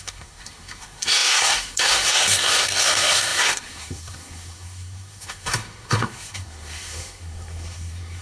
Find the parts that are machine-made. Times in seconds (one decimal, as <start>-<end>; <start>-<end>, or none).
0.0-8.2